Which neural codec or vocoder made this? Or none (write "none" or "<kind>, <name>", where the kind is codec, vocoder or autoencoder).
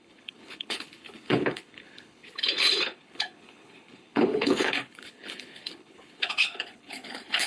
codec, HILCodec